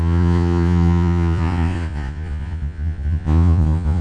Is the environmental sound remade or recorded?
remade